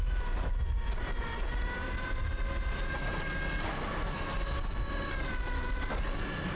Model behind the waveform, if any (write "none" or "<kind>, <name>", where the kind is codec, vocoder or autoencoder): none